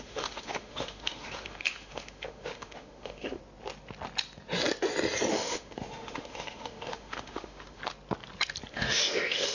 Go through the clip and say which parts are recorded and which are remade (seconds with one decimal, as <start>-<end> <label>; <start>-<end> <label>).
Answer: 0.0-3.4 remade; 3.4-5.3 recorded; 5.3-7.8 remade; 7.8-8.7 recorded; 8.7-9.5 remade